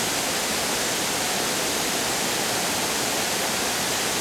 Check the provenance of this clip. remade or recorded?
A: recorded